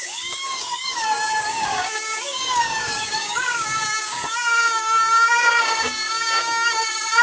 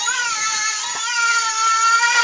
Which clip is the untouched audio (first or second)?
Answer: second